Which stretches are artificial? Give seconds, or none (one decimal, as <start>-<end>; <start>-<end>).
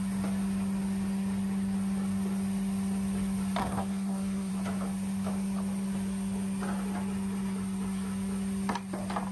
3.6-4.5